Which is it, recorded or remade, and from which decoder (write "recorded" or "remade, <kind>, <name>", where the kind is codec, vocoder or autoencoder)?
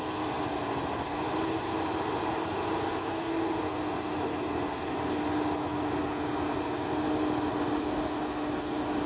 recorded